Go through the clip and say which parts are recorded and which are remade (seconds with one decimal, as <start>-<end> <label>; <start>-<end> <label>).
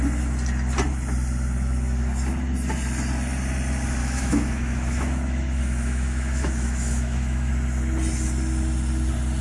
0.0-4.0 recorded; 4.0-7.5 remade; 7.5-9.4 recorded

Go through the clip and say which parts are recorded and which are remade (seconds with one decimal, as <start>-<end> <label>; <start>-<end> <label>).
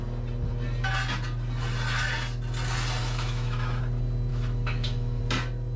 0.0-3.0 recorded; 3.0-3.8 remade; 3.8-4.3 recorded; 4.3-5.2 remade; 5.2-5.8 recorded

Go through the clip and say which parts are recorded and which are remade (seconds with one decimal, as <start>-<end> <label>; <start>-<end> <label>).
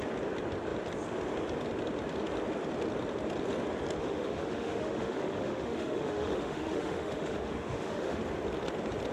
0.0-4.0 recorded; 4.0-8.2 remade; 8.2-9.1 recorded